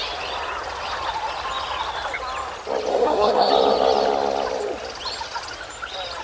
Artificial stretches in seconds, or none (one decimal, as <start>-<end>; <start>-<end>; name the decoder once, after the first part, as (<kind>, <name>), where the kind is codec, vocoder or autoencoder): 2.9-3.5 (codec, SNAC)